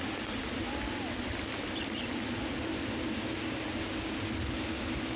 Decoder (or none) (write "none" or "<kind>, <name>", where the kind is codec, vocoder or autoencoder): none